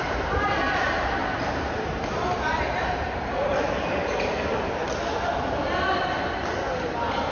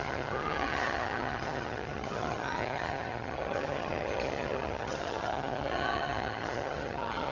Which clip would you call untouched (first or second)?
first